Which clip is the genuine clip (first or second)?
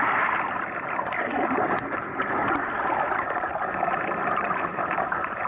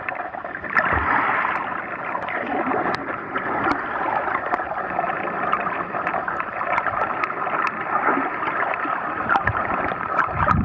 first